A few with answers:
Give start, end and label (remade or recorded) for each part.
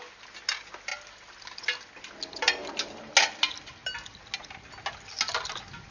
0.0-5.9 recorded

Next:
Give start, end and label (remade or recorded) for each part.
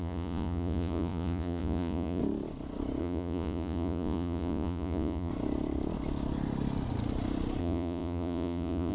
0.0-2.2 remade; 2.2-3.0 recorded; 3.0-5.3 remade; 5.3-7.6 recorded; 7.6-8.9 remade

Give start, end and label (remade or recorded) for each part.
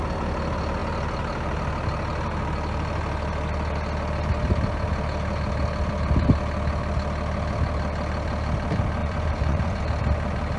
0.0-9.0 recorded; 9.0-9.8 remade; 9.8-10.6 recorded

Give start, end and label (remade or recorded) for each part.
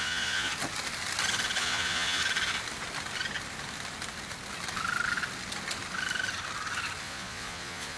0.0-0.5 remade; 0.5-1.6 recorded; 1.6-2.2 remade; 2.2-7.0 recorded; 7.0-8.0 remade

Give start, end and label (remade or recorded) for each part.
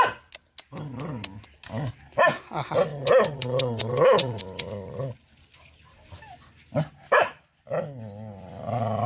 0.0-2.9 recorded; 2.9-4.4 remade; 4.4-9.1 recorded